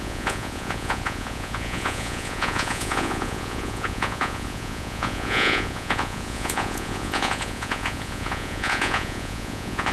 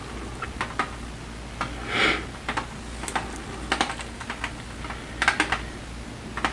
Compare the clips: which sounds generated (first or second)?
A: first